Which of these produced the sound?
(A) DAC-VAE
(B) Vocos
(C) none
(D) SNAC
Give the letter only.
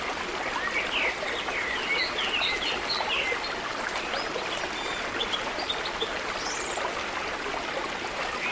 C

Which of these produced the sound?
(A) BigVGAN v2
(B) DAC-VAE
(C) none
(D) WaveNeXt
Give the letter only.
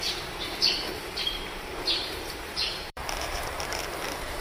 A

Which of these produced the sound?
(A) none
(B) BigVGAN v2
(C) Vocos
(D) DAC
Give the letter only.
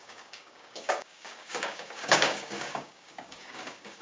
D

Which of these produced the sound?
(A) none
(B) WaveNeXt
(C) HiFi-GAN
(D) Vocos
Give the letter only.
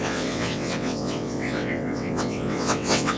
B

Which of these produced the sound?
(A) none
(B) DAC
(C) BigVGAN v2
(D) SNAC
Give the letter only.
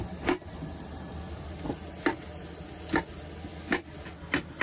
A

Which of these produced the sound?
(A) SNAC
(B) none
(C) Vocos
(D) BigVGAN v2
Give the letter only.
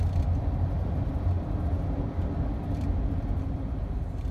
B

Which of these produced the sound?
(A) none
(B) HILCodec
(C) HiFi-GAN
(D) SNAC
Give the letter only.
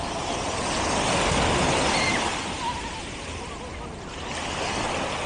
A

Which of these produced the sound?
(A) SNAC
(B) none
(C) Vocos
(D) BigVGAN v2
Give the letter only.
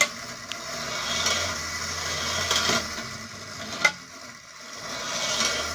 B